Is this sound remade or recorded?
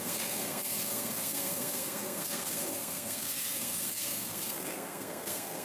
remade